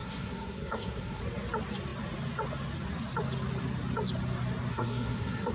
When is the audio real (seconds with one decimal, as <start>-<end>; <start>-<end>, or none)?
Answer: 1.2-4.7